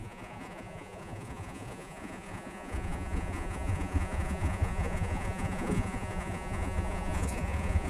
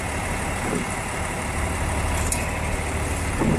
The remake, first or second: first